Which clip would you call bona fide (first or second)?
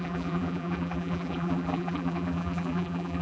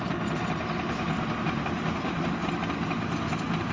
second